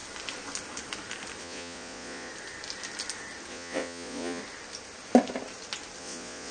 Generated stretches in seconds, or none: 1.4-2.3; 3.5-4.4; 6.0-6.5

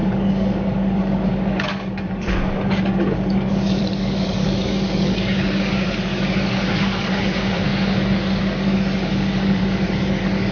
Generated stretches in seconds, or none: 0.0-10.5